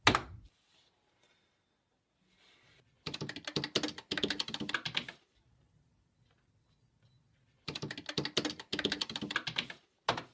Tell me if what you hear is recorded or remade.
recorded